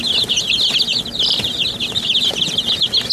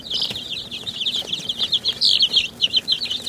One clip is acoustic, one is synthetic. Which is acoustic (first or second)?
first